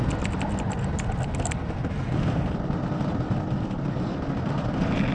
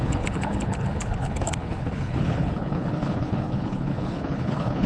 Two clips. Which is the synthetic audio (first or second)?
second